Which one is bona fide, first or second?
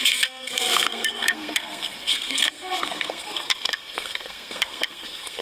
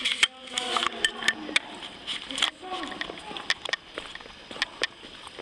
second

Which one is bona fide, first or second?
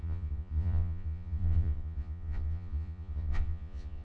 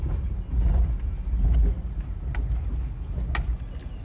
second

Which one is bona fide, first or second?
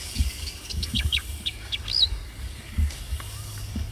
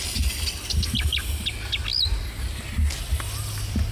second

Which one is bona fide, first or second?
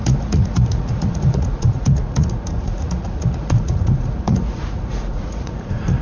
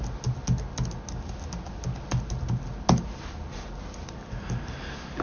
second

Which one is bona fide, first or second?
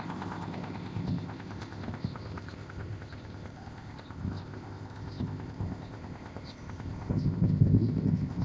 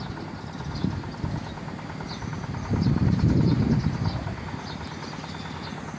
second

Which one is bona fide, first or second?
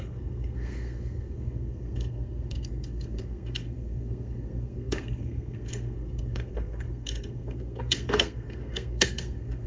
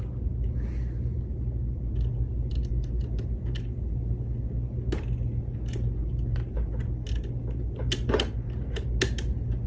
second